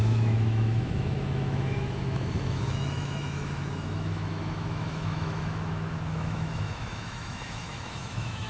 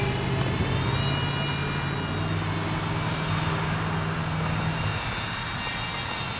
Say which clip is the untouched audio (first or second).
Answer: second